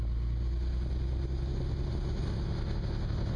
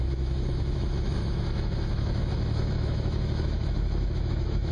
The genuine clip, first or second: first